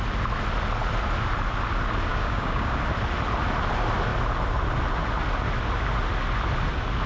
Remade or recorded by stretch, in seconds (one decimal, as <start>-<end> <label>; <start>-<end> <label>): 0.0-2.1 recorded; 2.1-2.8 remade; 2.8-7.1 recorded